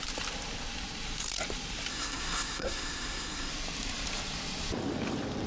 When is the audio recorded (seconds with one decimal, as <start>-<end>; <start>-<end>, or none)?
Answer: 0.0-1.9; 3.5-5.5